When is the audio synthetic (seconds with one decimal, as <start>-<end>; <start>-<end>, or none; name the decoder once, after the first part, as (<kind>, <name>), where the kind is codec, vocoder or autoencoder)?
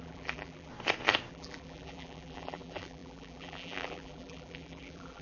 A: 0.0-0.7 (vocoder, BigVGAN v2); 1.3-5.2